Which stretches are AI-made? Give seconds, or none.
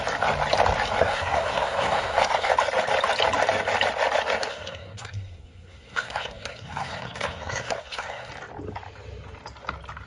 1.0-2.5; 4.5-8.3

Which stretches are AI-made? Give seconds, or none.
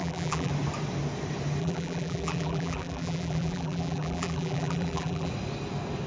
0.0-0.5; 1.6-5.3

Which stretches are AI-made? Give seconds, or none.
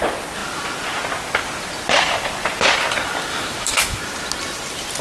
3.3-4.0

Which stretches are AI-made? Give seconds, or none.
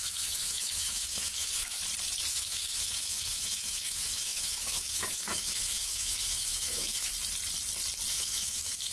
0.0-1.8; 2.3-7.1; 8.1-8.9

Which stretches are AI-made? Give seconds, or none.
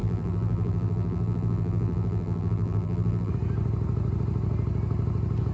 0.0-3.3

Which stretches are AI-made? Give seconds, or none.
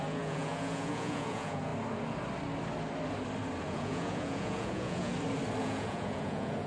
0.0-1.7; 3.7-5.1; 5.6-6.7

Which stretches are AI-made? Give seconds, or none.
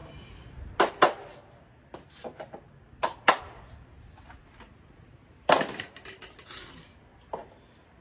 none